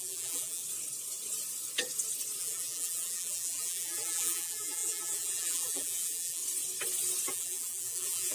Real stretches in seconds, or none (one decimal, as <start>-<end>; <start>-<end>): 0.6-2.4; 6.4-7.3